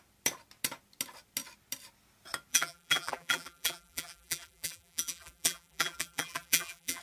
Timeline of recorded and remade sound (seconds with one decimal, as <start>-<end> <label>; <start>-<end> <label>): 0.0-2.5 recorded; 2.5-7.0 remade